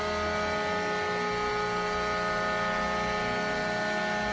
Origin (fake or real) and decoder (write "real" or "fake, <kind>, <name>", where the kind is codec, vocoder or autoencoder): real